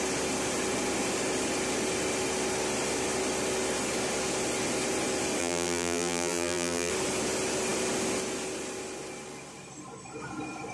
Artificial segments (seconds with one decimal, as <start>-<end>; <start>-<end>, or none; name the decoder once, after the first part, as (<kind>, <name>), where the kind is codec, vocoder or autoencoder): 5.4-6.9 (vocoder, BigVGAN v2)